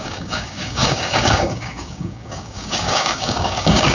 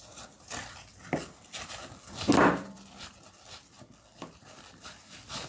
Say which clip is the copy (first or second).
first